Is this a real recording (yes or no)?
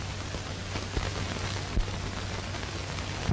yes